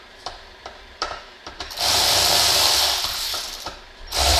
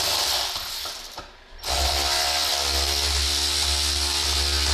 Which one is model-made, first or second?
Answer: first